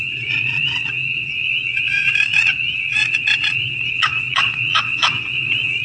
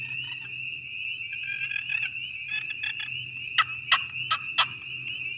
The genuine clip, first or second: second